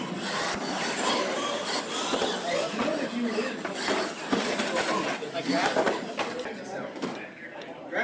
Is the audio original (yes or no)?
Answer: yes